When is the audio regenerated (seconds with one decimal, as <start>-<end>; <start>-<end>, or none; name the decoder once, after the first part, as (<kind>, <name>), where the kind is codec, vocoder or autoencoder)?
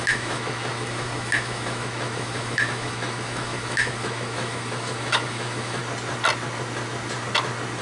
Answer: 0.0-5.8 (autoencoder, DAC-VAE)